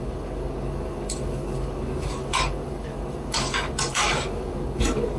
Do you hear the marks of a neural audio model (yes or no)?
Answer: yes